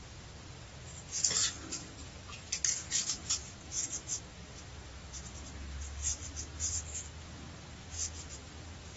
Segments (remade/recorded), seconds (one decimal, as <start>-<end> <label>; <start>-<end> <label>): 0.0-9.0 recorded